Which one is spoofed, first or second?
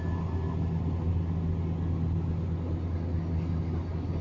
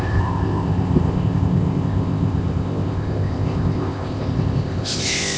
second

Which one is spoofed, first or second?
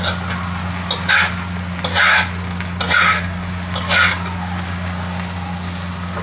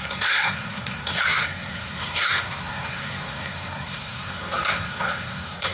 second